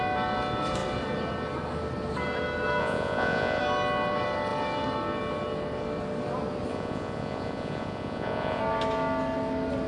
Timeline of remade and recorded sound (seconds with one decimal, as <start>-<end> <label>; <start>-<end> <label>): 0.0-2.8 recorded; 2.8-3.6 remade; 3.6-6.7 recorded; 6.7-8.6 remade; 8.6-9.9 recorded